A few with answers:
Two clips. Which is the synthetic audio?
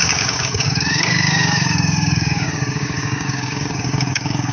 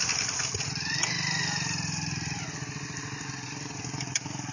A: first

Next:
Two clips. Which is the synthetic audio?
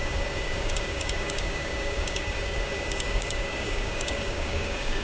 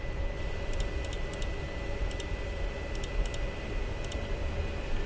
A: first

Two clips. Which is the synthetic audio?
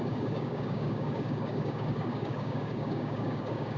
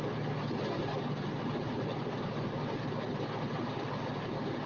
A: first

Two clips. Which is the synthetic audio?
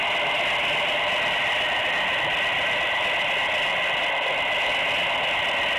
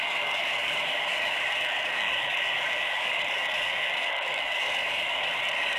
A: second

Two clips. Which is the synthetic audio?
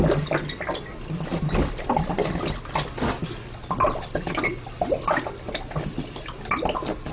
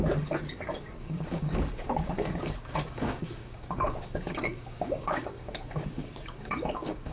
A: second